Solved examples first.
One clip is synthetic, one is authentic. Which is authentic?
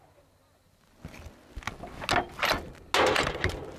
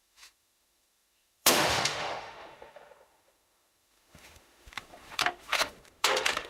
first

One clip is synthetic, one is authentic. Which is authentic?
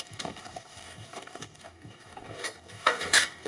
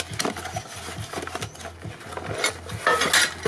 second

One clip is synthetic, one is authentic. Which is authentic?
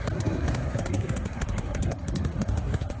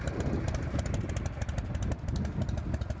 second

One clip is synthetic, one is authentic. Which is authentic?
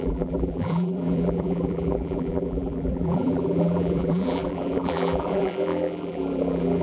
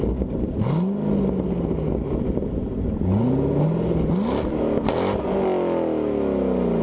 second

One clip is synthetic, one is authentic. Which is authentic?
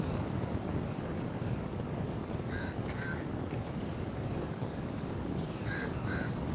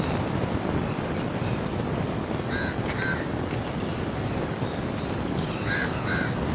second